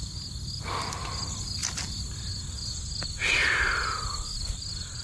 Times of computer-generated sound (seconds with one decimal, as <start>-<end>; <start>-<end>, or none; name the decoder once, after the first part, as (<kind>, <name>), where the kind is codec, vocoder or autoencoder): none